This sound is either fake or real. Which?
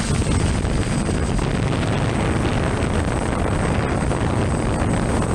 real